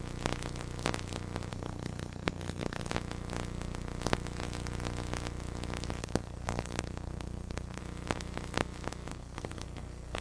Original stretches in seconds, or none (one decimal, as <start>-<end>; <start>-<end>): 0.0-1.5; 2.9-6.0; 7.8-9.1